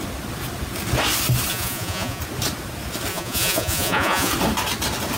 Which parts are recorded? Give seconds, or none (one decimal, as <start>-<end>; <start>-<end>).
0.0-1.5; 2.2-3.1; 4.3-5.2